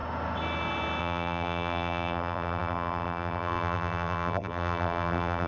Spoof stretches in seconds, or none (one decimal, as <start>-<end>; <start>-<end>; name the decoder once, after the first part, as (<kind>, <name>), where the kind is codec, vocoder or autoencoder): 1.0-5.5 (vocoder, BigVGAN v2)